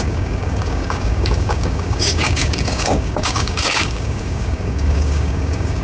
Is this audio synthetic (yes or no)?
yes